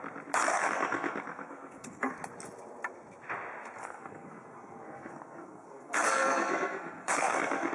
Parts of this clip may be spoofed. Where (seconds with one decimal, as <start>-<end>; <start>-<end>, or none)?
0.5-2.1; 3.8-7.7